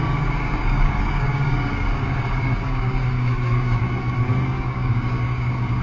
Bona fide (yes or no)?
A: no